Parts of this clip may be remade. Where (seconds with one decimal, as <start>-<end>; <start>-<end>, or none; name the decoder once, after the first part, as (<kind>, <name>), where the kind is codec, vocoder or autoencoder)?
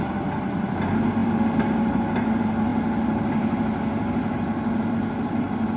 none